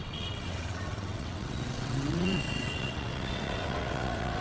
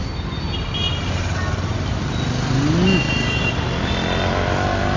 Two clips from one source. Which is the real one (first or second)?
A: second